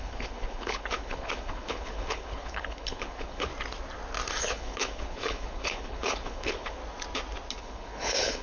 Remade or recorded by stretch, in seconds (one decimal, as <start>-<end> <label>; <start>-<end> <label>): 0.0-3.5 remade; 3.5-4.4 recorded; 4.4-6.8 remade; 6.8-7.6 recorded; 7.6-8.4 remade